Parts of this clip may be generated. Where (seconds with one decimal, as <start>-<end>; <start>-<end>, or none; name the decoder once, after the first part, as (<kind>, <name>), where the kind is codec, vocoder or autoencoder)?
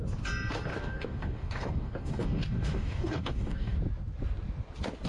0.7-3.8 (codec, DAC)